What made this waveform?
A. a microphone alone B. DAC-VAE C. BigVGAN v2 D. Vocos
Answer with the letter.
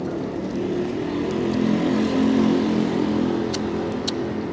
A